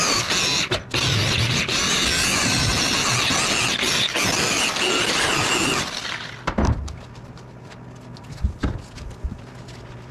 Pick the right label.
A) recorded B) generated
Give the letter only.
A